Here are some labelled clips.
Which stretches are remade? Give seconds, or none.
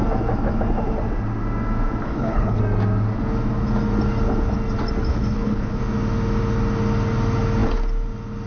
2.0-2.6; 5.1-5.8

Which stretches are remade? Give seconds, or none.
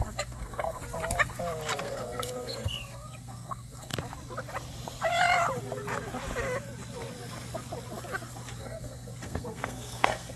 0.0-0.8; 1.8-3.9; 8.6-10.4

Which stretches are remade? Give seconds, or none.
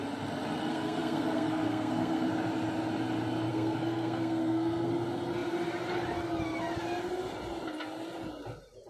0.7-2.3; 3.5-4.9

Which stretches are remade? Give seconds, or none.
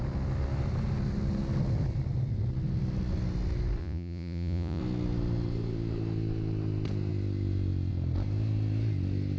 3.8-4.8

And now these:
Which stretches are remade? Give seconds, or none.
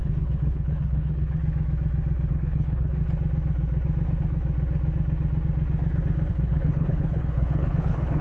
0.0-1.4; 2.3-3.0; 6.3-8.2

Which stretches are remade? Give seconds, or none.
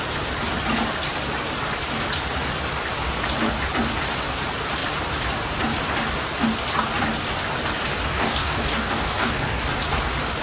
8.1-9.6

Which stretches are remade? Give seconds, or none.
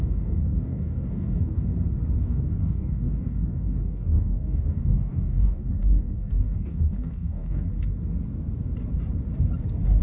0.0-1.7; 2.2-7.7